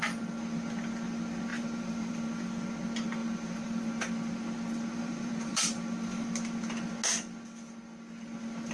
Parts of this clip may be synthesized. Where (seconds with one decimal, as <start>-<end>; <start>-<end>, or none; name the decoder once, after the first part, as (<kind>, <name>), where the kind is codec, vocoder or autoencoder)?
1.5-2.1 (vocoder, BigVGAN v2); 3.2-3.9; 4.9-5.6